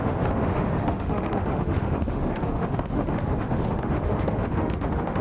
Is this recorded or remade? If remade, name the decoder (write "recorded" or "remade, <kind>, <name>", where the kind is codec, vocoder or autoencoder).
remade, autoencoder, DAC-VAE